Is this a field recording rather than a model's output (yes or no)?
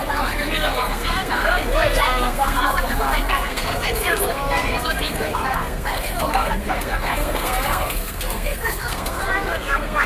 no